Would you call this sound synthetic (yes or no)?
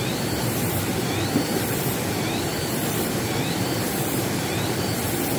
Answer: yes